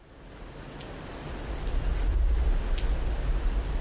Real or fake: real